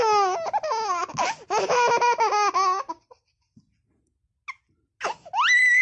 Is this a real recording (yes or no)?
yes